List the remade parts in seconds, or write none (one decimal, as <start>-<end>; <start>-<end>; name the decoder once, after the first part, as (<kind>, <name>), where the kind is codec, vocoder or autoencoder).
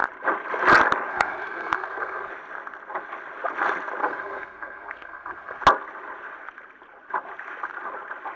1.1-2.3 (codec, SNAC); 4.0-5.6